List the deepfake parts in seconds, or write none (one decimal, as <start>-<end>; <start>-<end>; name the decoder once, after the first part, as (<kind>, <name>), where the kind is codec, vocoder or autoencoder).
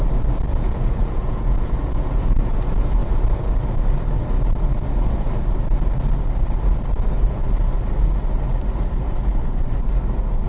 0.5-2.6 (vocoder, Vocos)